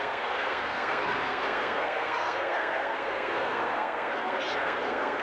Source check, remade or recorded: remade